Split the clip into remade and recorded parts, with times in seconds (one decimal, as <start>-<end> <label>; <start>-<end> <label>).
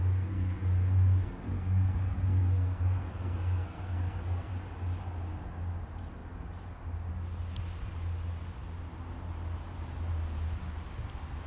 0.0-4.5 remade; 4.5-11.5 recorded